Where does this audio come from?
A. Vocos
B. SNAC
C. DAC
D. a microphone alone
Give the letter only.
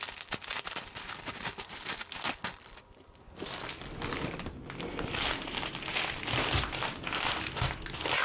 D